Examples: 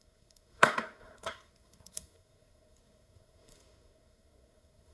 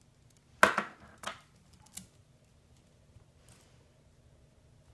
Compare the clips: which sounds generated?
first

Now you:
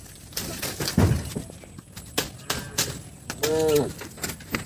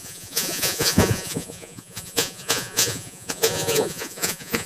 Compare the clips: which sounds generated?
second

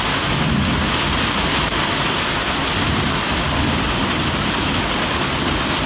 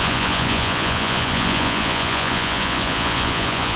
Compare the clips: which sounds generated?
second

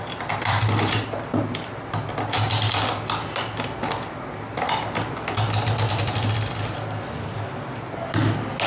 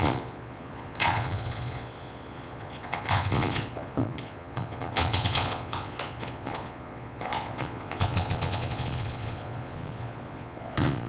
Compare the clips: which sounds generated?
second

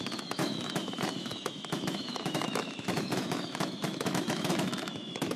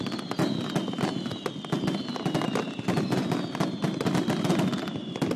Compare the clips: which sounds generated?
first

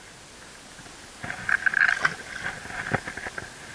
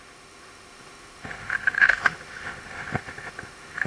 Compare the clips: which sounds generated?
second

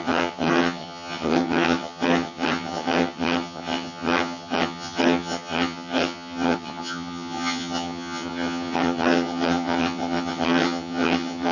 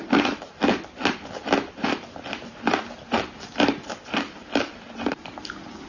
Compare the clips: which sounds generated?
first